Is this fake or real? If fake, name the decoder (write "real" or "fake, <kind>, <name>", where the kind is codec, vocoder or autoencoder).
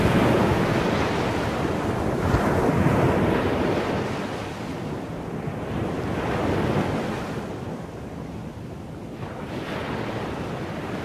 real